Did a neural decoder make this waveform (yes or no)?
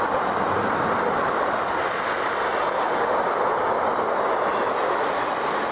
no